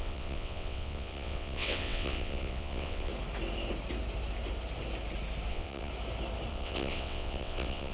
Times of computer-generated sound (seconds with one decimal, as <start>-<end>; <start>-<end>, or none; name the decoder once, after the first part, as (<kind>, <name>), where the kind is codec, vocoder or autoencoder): 0.0-3.1 (vocoder, WaveNeXt); 5.5-5.9; 6.5-7.9